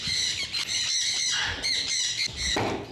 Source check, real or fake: real